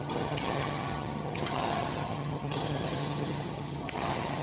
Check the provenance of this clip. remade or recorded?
remade